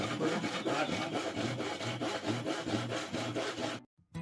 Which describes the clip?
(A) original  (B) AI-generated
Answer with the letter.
A